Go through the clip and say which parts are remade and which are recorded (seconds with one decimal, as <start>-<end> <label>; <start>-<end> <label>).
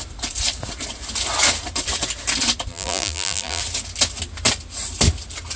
0.0-2.7 recorded; 2.7-3.6 remade; 3.6-5.6 recorded